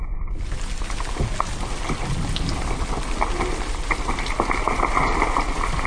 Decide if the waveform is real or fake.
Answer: real